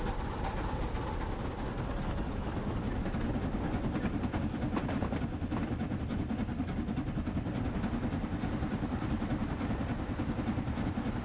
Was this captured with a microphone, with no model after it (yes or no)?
yes